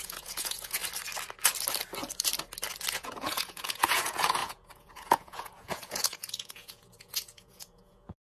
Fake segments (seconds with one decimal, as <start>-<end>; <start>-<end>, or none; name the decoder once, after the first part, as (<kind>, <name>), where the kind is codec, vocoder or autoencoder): 0.0-0.8 (vocoder, Vocos); 2.9-8.2